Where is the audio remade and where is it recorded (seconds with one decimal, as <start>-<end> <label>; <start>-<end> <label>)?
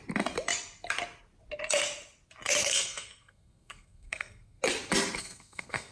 0.0-2.6 recorded; 2.6-4.6 remade; 4.6-5.2 recorded; 5.2-5.9 remade